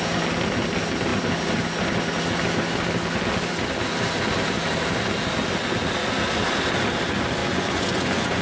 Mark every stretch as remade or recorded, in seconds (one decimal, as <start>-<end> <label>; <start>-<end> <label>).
0.0-7.4 recorded; 7.4-8.4 remade